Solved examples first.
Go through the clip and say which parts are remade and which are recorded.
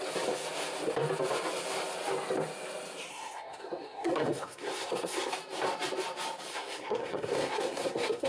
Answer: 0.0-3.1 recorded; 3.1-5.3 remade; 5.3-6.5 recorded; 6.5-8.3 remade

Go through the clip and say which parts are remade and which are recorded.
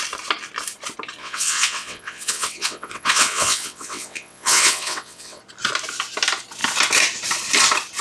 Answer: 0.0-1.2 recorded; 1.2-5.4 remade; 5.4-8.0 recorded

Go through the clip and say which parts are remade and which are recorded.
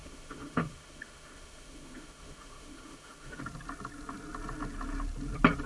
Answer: 0.0-3.4 remade; 3.4-5.7 recorded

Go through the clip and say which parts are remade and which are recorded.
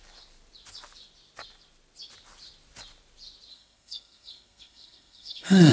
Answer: 0.0-3.5 recorded; 3.5-5.7 remade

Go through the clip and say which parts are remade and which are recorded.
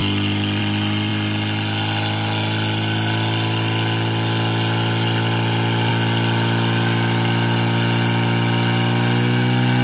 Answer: 0.0-9.8 recorded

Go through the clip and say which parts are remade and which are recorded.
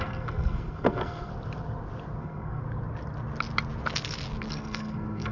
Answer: 0.0-1.3 remade; 1.3-2.2 recorded; 2.2-2.6 remade; 2.6-4.5 recorded; 4.5-5.3 remade